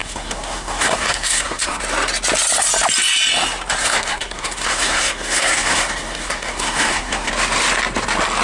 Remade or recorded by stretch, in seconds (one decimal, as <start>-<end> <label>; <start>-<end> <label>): 0.0-1.8 remade; 1.8-3.8 recorded; 3.8-7.3 remade; 7.3-8.4 recorded